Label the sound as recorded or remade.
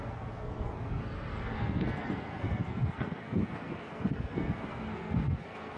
remade